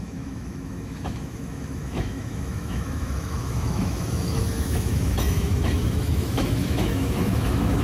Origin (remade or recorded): remade